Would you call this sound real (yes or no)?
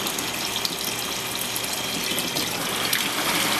yes